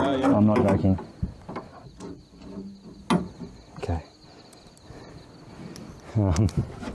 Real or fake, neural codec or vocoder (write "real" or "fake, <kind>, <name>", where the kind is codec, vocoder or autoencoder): real